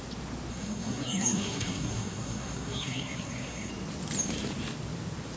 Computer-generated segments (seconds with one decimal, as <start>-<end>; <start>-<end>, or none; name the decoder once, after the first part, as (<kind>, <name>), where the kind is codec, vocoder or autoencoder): 0.5-3.7 (codec, SNAC)